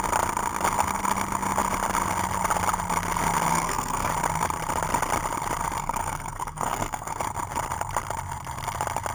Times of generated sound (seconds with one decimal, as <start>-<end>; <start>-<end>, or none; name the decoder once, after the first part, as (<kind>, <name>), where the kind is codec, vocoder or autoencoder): 3.5-4.1 (codec, SNAC); 5.8-7.2

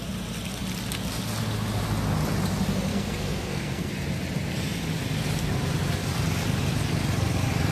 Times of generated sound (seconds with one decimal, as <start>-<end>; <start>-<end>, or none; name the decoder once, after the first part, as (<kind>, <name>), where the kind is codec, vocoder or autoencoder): 2.9-3.9 (codec, SNAC)